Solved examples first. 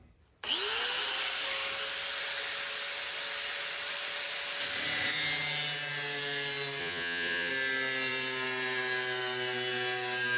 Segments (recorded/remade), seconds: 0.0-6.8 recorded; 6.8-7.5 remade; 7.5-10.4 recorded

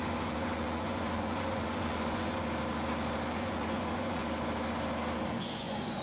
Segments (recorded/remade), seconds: 0.0-2.4 remade; 2.4-3.3 recorded; 3.3-4.2 remade; 4.2-5.4 recorded; 5.4-6.0 remade

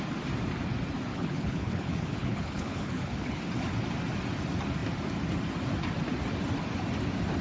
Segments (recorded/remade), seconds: 0.0-1.1 recorded; 1.1-3.4 remade; 3.4-7.4 recorded

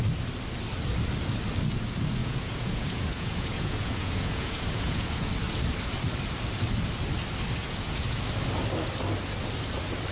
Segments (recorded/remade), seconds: 0.0-2.2 recorded; 2.2-5.3 remade; 5.3-7.6 recorded; 7.6-8.2 remade; 8.2-10.1 recorded

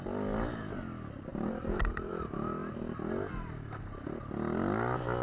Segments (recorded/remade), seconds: 0.0-1.3 recorded; 1.3-2.1 remade; 2.1-5.2 recorded

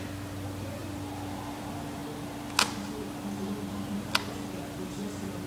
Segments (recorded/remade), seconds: 0.0-5.5 recorded